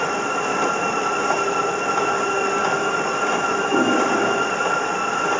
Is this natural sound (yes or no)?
yes